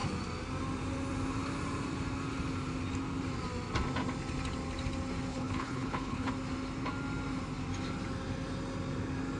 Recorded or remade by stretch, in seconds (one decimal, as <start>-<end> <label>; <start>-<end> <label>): 0.0-5.3 recorded; 5.3-6.3 remade; 6.3-9.4 recorded